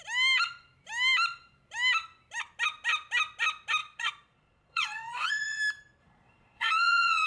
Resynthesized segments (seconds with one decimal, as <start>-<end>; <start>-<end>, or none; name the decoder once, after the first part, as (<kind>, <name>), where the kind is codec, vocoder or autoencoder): 3.8-5.6 (vocoder, Vocos); 6.0-7.3